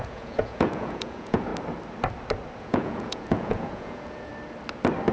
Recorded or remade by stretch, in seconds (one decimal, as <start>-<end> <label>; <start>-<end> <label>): 0.0-1.5 remade; 1.5-2.6 recorded; 2.6-4.3 remade; 4.3-5.1 recorded